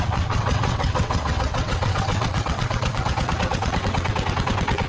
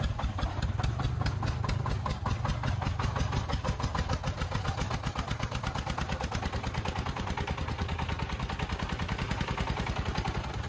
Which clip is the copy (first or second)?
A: first